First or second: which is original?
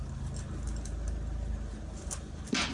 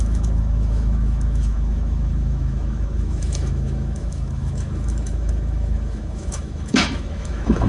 first